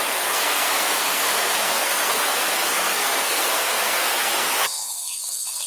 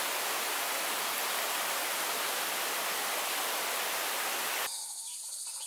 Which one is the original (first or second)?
second